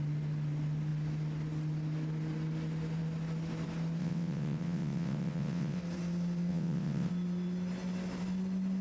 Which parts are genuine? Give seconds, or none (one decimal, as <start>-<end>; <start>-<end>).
0.0-4.0; 5.8-6.5; 7.1-8.8